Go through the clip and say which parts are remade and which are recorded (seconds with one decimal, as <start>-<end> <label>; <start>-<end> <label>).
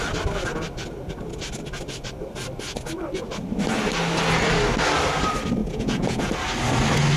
0.0-5.6 recorded; 5.6-6.3 remade; 6.3-7.2 recorded